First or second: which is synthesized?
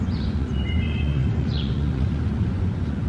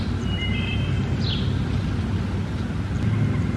first